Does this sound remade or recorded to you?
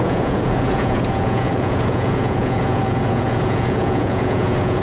remade